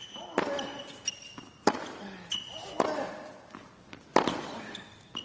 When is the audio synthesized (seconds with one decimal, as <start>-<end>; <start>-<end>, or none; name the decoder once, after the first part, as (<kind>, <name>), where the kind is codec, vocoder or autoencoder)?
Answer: none